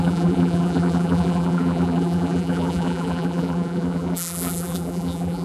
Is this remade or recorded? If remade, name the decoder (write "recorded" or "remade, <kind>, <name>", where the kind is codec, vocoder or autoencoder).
remade, vocoder, BigVGAN v2